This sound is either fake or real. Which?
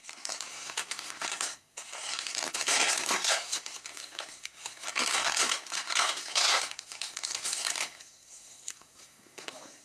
fake